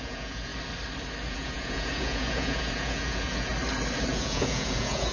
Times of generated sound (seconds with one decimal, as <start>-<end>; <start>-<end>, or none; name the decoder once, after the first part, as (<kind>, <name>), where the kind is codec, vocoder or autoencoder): 0.0-0.5 (vocoder, Vocos); 1.3-3.5; 4.1-5.1